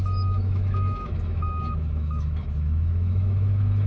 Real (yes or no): no